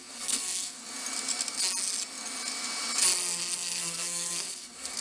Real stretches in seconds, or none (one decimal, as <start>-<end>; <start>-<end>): 0.8-3.8